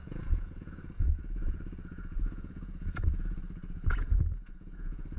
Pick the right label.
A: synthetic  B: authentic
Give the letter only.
A